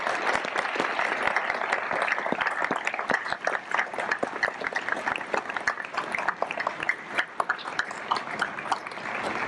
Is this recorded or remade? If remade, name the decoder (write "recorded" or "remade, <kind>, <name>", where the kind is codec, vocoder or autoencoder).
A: recorded